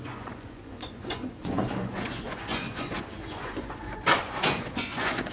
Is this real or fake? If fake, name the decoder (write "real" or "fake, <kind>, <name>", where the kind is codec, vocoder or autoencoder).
fake, vocoder, Vocos